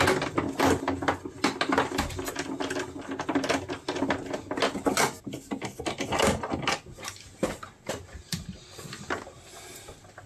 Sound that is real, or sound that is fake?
real